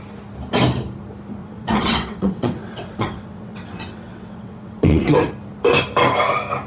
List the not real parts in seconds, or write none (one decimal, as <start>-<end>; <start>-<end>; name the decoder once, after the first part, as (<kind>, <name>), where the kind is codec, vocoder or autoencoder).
1.4-5.3 (vocoder, WaveNeXt)